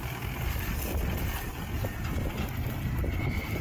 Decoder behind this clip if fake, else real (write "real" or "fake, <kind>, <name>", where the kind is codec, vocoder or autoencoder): real